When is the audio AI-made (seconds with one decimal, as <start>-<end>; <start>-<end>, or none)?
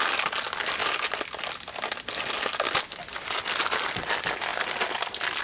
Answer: none